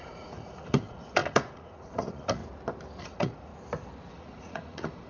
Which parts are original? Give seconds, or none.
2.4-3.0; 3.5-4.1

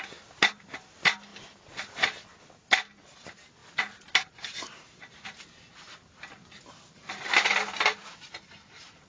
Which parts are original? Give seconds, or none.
0.0-1.3; 1.9-9.1